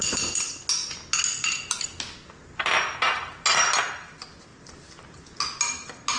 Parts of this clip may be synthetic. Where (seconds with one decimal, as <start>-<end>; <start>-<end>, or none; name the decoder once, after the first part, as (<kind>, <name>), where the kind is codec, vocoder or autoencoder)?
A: none